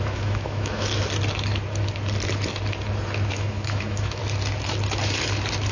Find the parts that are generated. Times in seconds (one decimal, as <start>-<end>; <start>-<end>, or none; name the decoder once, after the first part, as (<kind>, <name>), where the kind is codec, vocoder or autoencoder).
0.0-0.9 (autoencoder, DAC-VAE); 3.3-4.2